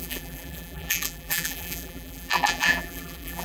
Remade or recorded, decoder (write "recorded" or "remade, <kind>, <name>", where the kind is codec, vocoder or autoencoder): remade, vocoder, BigVGAN v2